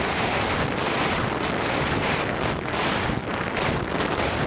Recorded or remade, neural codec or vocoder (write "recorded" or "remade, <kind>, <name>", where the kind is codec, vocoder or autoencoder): recorded